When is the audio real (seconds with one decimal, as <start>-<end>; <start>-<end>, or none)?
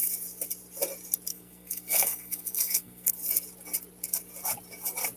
0.0-1.3; 3.1-5.2